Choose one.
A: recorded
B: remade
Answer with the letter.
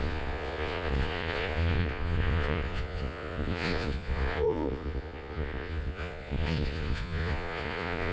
B